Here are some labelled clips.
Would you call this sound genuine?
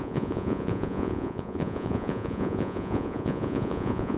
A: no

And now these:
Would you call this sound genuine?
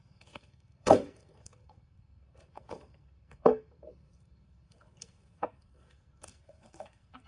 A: no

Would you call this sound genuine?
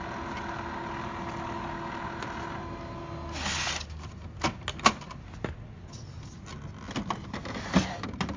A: yes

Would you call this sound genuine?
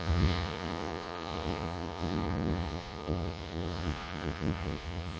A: no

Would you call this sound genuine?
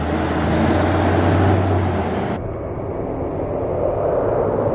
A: yes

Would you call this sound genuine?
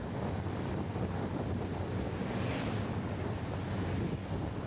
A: yes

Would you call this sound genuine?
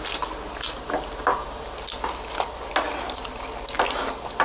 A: yes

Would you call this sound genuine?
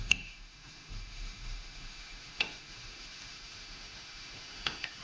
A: no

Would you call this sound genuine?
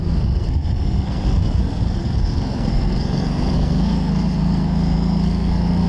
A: no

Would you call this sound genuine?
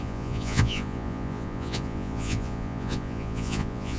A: no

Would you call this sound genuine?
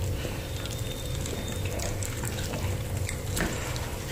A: no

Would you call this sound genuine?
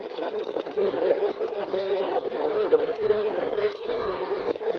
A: no